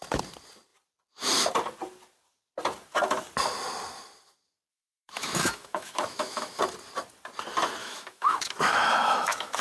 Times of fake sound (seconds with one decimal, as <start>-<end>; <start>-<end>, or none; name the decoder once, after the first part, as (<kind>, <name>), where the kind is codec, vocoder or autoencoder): 4.7-6.6 (autoencoder, DAC-VAE); 7.8-9.6